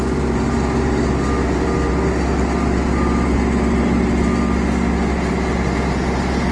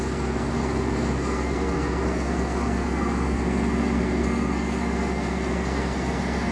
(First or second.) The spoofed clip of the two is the second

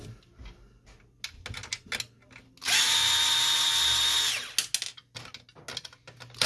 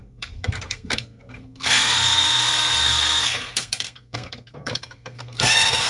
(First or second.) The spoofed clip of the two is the second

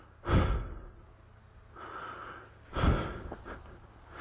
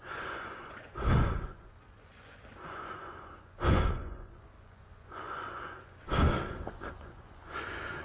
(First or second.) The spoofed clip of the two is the second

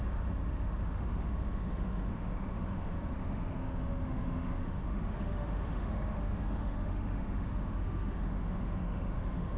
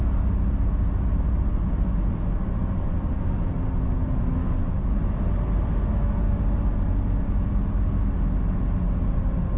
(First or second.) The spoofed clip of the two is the first